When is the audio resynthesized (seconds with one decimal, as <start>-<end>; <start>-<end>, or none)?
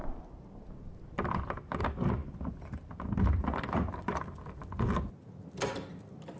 none